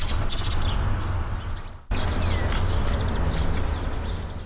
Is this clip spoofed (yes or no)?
no